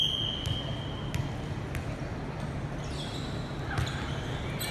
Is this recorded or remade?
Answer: recorded